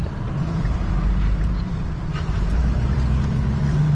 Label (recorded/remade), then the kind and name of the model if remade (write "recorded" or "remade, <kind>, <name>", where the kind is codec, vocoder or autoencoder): remade, vocoder, BigVGAN v2